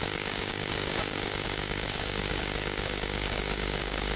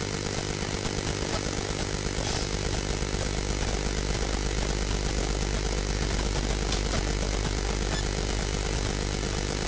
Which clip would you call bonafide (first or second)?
second